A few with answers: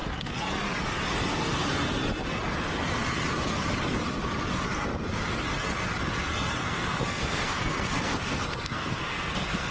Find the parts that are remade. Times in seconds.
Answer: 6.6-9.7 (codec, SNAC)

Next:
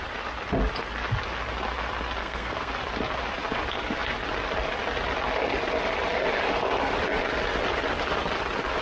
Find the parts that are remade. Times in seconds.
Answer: 2.2-2.7 (codec, SNAC)

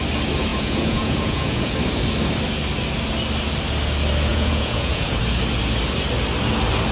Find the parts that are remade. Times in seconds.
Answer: 0.5-1.7 (vocoder, Vocos); 4.3-5.2